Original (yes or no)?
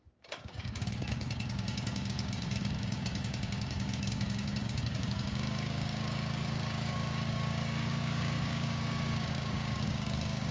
no